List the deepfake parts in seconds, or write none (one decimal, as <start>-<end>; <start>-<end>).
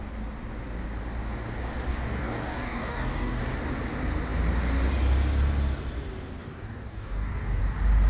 1.9-3.4; 6.4-7.6